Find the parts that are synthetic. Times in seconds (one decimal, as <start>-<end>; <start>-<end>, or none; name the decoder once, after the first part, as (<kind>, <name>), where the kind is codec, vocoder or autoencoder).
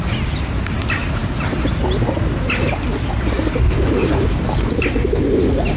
1.2-1.8 (vocoder, BigVGAN v2); 4.0-4.7